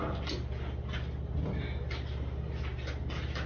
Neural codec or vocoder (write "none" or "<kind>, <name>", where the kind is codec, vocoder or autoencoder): none